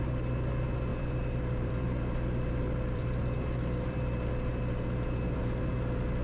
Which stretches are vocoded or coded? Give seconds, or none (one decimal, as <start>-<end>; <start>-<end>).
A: 0.9-4.6